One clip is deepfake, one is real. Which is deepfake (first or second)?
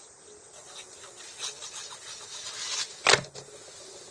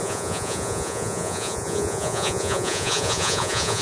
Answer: second